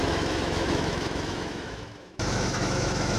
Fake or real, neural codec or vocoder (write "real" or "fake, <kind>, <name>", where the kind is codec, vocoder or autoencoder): fake, autoencoder, DAC-VAE